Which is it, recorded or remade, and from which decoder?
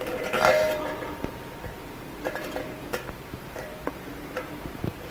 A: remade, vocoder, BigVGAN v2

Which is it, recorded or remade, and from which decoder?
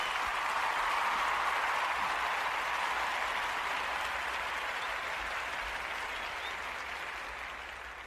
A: recorded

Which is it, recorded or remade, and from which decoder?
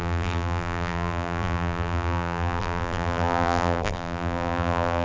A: remade, vocoder, BigVGAN v2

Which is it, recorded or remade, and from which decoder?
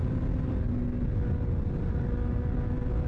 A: recorded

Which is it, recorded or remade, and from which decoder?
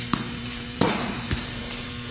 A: remade, vocoder, BigVGAN v2